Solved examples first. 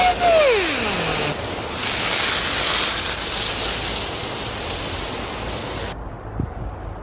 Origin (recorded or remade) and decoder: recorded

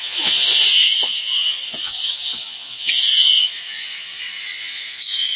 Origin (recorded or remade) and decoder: remade, vocoder, Vocos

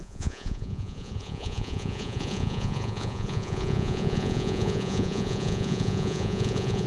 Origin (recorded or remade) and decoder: remade, vocoder, Vocos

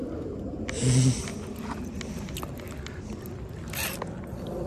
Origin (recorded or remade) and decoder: recorded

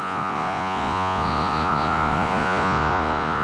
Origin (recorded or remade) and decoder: remade, vocoder, Vocos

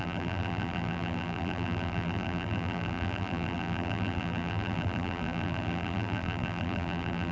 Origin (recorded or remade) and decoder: remade, vocoder, BigVGAN v2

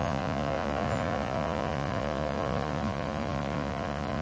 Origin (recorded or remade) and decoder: remade, vocoder, Vocos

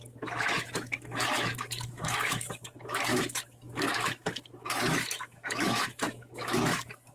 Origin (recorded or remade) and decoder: remade, autoencoder, DAC-VAE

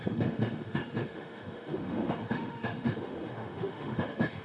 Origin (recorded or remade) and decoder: remade, autoencoder, DAC-VAE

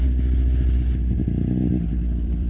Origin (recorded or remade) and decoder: remade, vocoder, BigVGAN v2